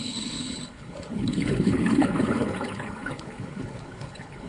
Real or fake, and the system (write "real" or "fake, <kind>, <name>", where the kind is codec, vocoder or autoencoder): fake, codec, HILCodec